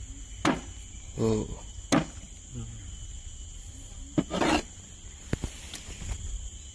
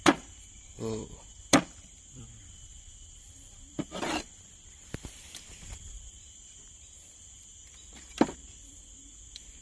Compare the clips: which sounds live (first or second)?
first